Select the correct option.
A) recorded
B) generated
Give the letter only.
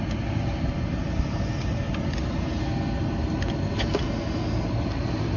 A